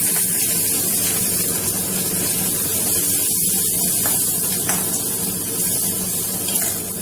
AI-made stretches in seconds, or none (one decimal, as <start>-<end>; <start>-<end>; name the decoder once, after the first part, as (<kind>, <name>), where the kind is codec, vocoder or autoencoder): none